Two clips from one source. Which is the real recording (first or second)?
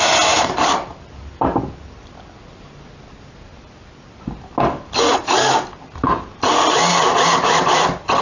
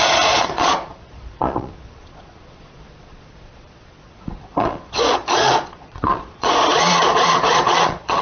first